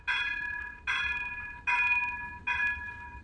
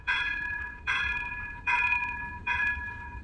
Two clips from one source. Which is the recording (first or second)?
first